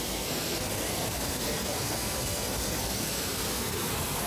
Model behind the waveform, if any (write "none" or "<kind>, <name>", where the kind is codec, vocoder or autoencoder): codec, SNAC